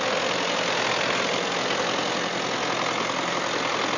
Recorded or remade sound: recorded